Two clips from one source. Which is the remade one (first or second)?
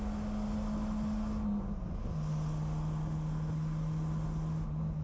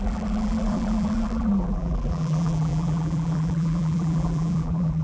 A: second